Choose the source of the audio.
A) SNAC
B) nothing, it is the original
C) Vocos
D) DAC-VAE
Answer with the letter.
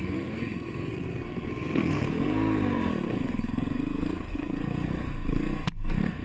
A